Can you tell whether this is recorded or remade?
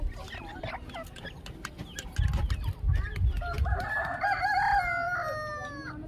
recorded